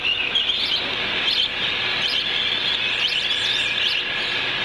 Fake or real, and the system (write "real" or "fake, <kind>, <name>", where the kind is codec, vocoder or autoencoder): real